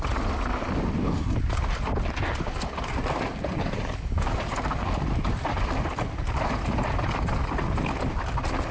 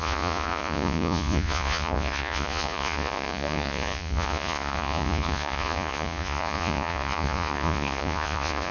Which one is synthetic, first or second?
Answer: second